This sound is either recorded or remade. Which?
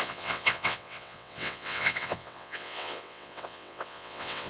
remade